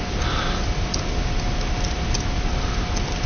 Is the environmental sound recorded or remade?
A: recorded